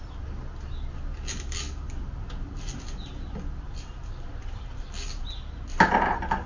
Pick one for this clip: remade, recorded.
recorded